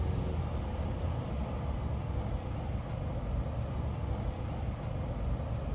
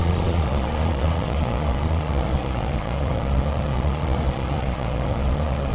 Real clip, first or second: first